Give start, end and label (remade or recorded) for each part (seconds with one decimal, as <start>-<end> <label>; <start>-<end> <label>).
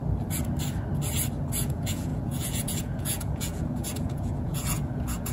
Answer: 0.0-1.6 recorded; 1.6-5.3 remade